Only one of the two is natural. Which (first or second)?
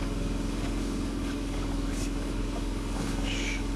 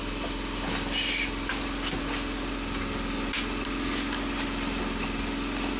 second